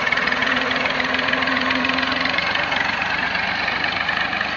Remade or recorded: remade